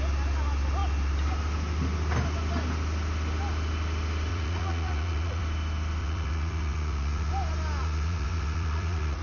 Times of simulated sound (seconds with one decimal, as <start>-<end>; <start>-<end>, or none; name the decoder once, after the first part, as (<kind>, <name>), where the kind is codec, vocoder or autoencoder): 4.3-5.4 (vocoder, Vocos); 6.0-7.3; 7.8-9.2